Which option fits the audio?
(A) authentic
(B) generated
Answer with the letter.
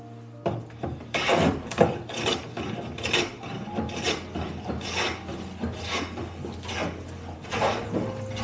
A